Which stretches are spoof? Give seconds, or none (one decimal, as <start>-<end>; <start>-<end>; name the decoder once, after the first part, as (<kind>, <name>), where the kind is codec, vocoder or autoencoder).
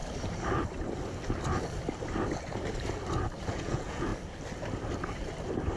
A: 3.5-4.1 (vocoder, Vocos)